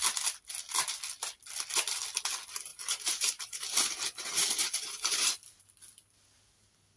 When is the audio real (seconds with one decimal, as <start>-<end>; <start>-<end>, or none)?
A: 0.0-2.7; 5.8-7.0